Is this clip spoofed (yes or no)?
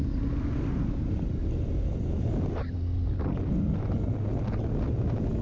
no